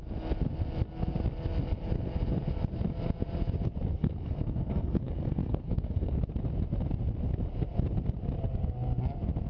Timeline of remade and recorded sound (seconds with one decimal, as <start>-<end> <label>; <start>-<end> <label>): 0.0-3.9 recorded; 3.9-6.1 remade; 6.1-9.5 recorded